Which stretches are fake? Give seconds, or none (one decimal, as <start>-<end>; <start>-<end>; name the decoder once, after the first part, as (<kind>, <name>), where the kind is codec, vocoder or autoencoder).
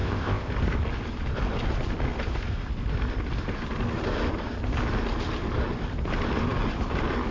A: 0.0-0.5 (codec, ZipCodec)